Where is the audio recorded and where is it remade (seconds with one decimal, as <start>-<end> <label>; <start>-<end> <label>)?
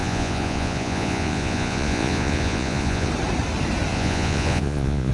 0.0-3.1 remade; 3.1-3.9 recorded; 3.9-5.1 remade